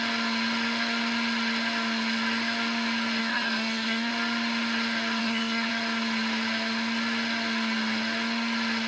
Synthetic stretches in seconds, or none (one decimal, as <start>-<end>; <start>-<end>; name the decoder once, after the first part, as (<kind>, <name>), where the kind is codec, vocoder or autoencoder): 3.2-4.1 (codec, SNAC); 5.2-5.7